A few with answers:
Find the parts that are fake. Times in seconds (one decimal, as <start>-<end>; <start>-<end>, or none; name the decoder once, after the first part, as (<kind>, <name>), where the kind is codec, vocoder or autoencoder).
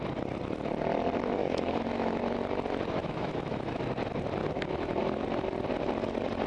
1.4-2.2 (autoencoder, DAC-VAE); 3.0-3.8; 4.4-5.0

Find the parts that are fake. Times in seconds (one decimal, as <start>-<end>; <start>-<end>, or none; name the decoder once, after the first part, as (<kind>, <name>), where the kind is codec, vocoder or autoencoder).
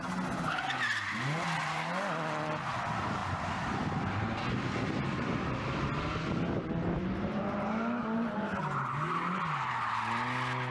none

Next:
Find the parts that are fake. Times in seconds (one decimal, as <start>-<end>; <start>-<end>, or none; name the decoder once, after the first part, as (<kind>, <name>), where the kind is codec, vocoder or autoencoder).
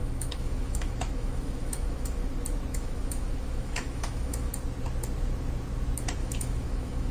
0.0-2.3 (autoencoder, DAC-VAE); 2.7-4.5; 6.2-7.1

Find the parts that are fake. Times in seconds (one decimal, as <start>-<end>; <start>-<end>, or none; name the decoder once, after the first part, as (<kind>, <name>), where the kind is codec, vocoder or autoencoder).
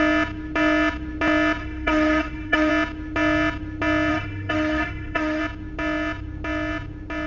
1.6-2.7 (autoencoder, DAC-VAE); 4.1-5.4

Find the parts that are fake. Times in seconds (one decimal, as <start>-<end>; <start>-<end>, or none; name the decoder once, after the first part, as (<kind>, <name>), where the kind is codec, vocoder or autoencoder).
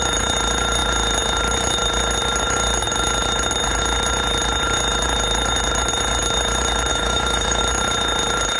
6.9-7.6 (autoencoder, DAC-VAE)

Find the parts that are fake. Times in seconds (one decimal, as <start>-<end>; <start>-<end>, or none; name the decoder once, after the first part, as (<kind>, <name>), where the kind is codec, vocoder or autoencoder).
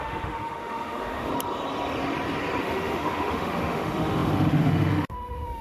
0.0-1.3 (autoencoder, DAC-VAE); 2.6-5.6